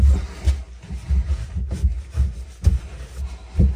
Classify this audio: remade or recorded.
recorded